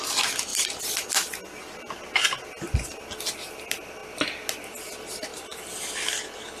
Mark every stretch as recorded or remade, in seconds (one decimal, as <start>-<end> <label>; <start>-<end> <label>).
0.0-5.3 recorded; 5.3-5.8 remade; 5.8-6.6 recorded